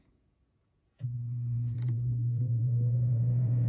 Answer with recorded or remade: remade